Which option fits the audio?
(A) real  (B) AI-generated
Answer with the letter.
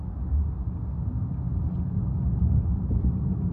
A